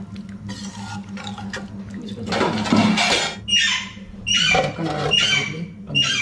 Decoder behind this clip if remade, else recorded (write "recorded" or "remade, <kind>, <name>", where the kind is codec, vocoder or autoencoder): recorded